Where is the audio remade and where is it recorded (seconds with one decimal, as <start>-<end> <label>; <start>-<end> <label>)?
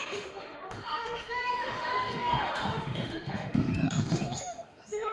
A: 0.0-5.1 remade